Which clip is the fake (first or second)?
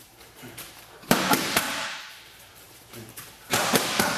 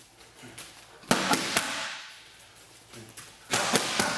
first